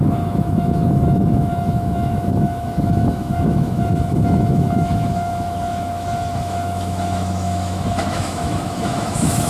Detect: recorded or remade remade